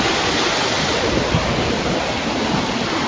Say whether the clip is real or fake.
real